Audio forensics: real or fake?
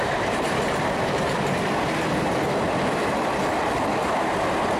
fake